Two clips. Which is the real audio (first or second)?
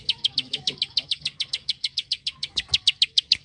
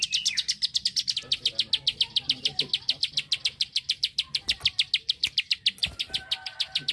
second